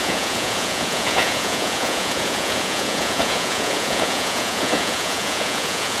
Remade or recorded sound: remade